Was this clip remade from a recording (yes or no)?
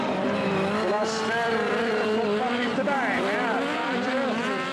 yes